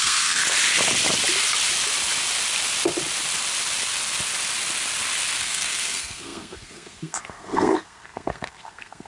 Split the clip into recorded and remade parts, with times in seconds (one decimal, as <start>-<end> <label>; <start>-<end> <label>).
0.0-0.4 remade; 0.4-5.4 recorded; 5.4-9.1 remade